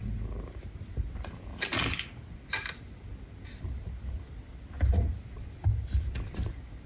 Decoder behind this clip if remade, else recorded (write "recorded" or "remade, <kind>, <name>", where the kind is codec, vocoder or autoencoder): recorded